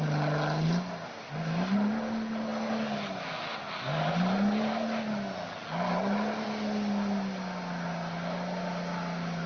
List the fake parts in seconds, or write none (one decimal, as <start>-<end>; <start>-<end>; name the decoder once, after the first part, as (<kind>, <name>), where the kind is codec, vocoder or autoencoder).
none